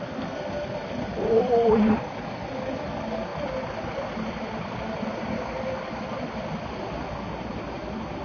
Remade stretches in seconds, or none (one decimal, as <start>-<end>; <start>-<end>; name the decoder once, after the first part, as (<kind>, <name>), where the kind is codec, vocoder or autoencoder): 1.1-2.3 (vocoder, BigVGAN v2)